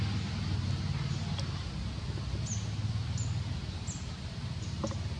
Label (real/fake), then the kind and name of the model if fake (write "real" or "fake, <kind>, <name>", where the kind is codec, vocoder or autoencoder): real